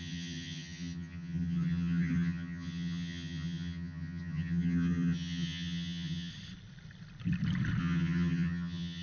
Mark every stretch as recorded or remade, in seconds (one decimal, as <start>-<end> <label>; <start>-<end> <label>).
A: 0.0-6.3 remade; 6.3-7.8 recorded; 7.8-9.0 remade